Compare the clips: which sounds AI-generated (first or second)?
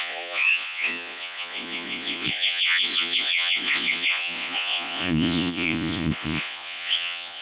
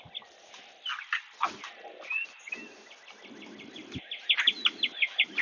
first